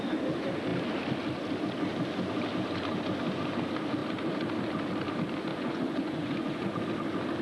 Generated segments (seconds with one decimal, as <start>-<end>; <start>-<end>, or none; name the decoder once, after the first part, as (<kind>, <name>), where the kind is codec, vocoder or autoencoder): 5.5-6.7 (vocoder, Vocos)